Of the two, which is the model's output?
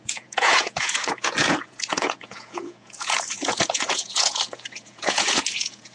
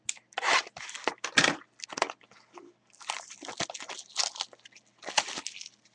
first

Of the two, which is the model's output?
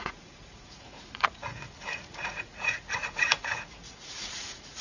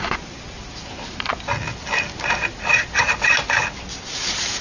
first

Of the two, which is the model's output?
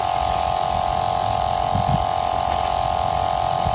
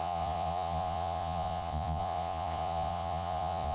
second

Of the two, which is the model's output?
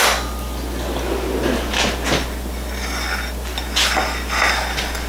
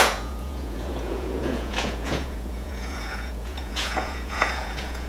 second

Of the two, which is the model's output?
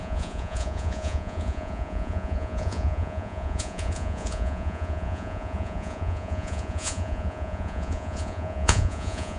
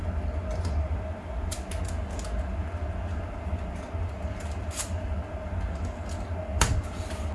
first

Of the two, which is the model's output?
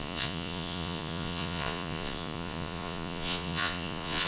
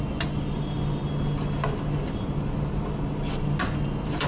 first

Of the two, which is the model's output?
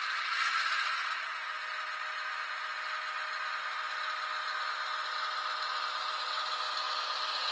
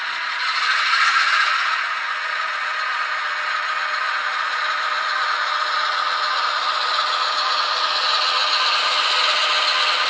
second